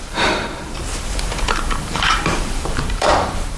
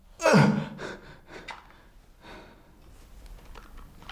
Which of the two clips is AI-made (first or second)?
first